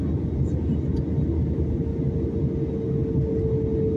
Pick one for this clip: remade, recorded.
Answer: recorded